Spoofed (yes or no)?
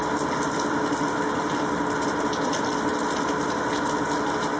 no